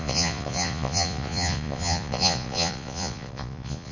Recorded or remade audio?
remade